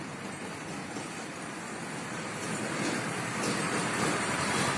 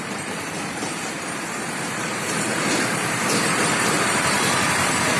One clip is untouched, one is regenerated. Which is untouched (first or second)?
first